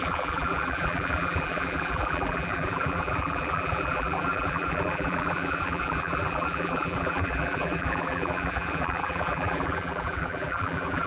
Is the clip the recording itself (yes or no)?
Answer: no